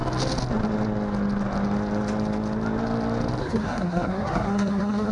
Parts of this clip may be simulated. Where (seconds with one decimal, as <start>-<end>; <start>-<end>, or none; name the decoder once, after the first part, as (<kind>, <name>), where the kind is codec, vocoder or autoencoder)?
3.4-5.1 (codec, SNAC)

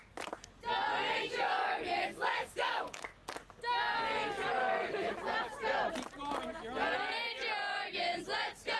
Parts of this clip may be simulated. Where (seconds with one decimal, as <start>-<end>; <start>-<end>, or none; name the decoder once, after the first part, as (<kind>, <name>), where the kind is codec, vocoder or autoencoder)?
1.2-3.6 (codec, DAC); 4.6-5.1

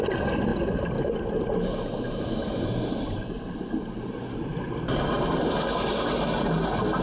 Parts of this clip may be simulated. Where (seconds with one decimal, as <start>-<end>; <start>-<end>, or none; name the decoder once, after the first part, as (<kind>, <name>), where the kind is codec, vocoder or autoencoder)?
none